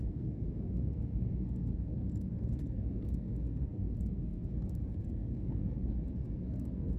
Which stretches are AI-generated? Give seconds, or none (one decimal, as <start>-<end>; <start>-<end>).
0.0-7.0